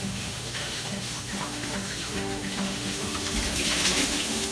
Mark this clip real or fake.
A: fake